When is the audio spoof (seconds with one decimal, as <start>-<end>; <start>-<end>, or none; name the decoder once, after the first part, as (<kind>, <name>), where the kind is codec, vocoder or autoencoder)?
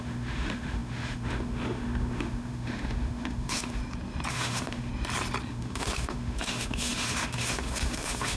0.0-3.8 (autoencoder, DAC-VAE); 4.3-4.9; 5.5-8.4